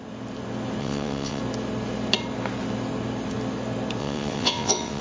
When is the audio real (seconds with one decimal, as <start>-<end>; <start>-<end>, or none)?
0.0-0.8; 1.4-4.0

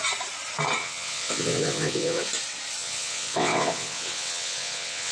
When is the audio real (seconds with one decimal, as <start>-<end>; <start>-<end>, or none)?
0.0-0.8; 2.3-2.8

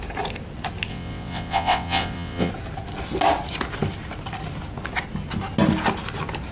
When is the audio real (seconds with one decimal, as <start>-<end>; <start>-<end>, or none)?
0.0-0.9; 2.5-6.5

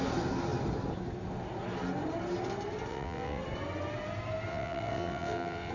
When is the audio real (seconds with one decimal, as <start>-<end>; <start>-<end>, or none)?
0.0-2.9; 3.4-4.5

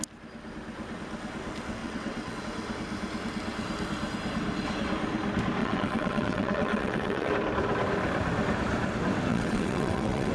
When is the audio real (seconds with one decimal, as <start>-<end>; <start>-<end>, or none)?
0.0-1.8; 2.4-5.6; 7.3-9.3

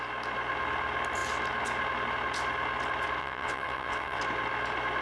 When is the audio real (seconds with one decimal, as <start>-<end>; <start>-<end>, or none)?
0.0-3.2; 4.2-5.0

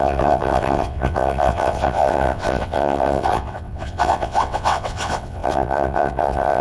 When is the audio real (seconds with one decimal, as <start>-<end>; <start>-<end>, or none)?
none